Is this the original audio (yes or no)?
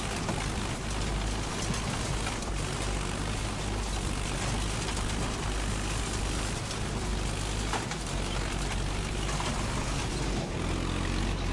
yes